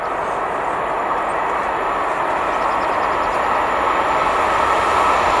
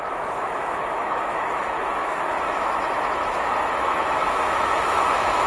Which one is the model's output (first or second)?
second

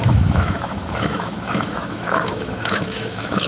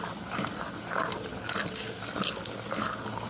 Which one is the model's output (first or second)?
first